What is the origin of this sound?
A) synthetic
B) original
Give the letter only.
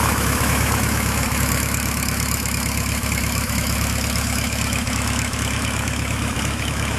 A